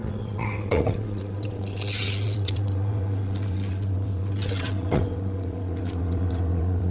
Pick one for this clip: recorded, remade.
remade